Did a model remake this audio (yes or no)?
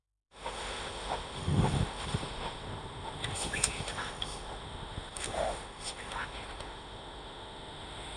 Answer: yes